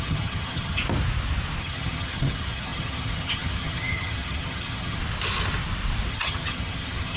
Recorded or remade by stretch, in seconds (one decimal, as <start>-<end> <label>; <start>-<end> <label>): 0.0-0.8 remade; 0.8-1.6 recorded; 1.6-5.0 remade; 5.0-6.1 recorded; 6.1-7.2 remade